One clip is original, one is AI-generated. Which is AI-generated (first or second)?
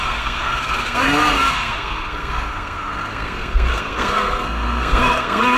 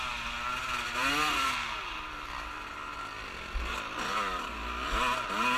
first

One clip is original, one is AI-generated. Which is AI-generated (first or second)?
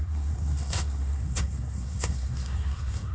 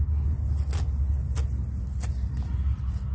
first